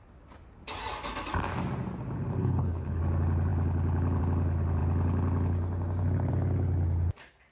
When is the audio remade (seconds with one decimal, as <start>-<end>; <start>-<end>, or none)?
2.4-3.0